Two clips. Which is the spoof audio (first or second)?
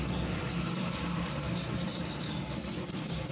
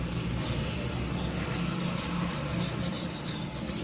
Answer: first